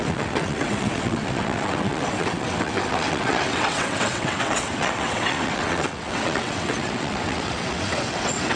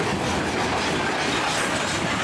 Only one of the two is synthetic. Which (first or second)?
first